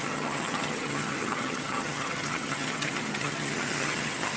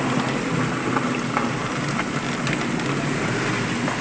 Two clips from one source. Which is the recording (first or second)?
second